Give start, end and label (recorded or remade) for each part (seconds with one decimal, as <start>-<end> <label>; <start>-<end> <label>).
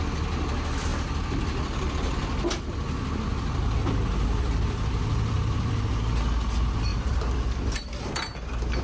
0.0-0.9 recorded; 0.9-5.8 remade; 5.8-6.9 recorded; 6.9-8.8 remade